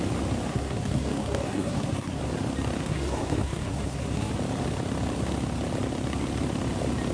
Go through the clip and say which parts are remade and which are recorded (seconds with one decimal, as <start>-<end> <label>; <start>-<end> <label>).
0.0-0.5 recorded; 0.5-2.2 remade; 2.2-2.8 recorded; 2.8-4.3 remade; 4.3-7.1 recorded